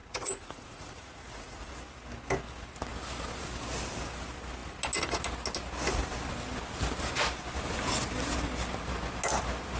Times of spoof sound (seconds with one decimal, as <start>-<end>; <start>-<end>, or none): 0.0-1.7